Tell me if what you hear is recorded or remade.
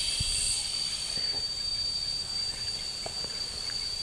recorded